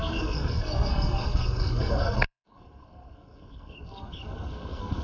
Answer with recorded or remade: remade